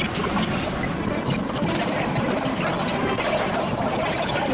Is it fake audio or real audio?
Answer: real